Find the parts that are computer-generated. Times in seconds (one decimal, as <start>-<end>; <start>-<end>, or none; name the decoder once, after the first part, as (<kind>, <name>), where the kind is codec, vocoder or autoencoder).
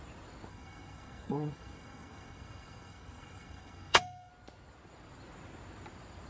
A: 0.5-4.3 (codec, SNAC)